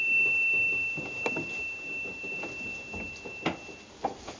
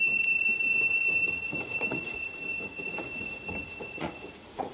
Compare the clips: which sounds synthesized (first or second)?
second